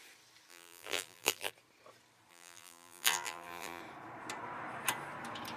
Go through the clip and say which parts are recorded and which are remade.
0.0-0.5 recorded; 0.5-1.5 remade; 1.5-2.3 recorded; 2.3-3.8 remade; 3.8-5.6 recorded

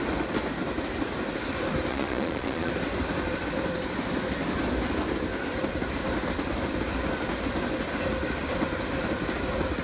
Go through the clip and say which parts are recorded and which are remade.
0.0-1.9 recorded; 1.9-2.7 remade; 2.7-9.8 recorded

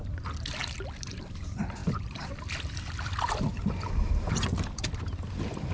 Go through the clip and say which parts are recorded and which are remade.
0.0-1.8 recorded; 1.8-5.0 remade; 5.0-5.7 recorded

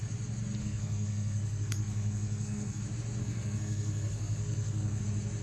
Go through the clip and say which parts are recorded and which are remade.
0.0-0.6 recorded; 0.6-2.8 remade; 2.8-3.2 recorded; 3.2-5.0 remade; 5.0-5.4 recorded